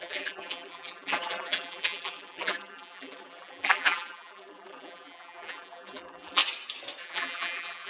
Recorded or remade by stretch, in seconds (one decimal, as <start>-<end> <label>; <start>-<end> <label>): 0.0-6.4 remade; 6.4-7.0 recorded; 7.0-7.9 remade